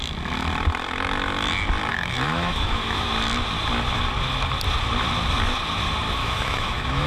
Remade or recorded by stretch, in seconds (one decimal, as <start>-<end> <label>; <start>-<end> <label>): 0.0-1.9 recorded; 1.9-3.1 remade; 3.1-6.2 recorded; 6.2-7.1 remade